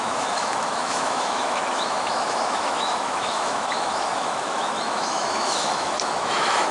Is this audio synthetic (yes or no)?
yes